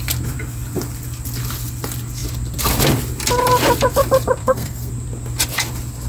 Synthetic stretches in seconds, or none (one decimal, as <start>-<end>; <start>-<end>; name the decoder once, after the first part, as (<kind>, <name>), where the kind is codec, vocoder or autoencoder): 4.4-4.9 (codec, SNAC)